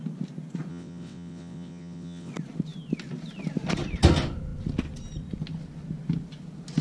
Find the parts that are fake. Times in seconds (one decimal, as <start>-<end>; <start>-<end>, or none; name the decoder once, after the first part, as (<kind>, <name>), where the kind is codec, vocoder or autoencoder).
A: 0.7-2.3 (vocoder, WaveNeXt)